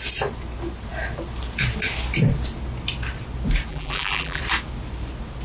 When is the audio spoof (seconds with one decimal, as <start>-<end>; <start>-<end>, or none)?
3.7-4.4